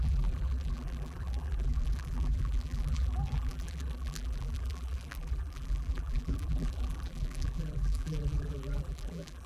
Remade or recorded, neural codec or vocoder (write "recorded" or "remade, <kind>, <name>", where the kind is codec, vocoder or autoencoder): remade, vocoder, BigVGAN v2